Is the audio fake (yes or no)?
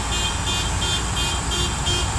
no